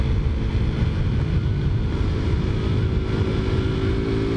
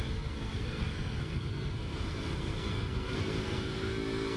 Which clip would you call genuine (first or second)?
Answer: first